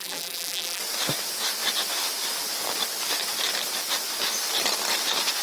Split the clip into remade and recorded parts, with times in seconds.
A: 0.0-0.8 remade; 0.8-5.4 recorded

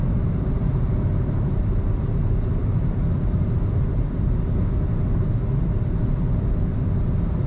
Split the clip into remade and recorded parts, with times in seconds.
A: 0.0-0.7 recorded; 0.7-2.1 remade; 2.1-2.6 recorded; 2.6-4.4 remade; 4.4-7.5 recorded

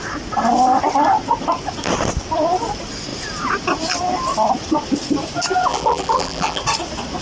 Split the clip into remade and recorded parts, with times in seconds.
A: 0.0-5.7 recorded; 5.7-6.6 remade; 6.6-7.2 recorded